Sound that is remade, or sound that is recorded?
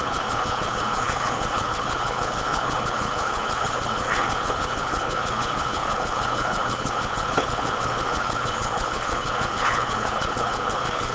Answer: remade